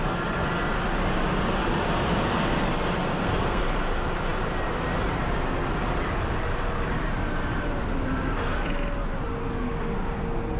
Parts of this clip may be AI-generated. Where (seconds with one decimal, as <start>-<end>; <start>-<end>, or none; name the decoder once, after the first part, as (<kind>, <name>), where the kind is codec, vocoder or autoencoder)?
3.0-3.6 (codec, SNAC)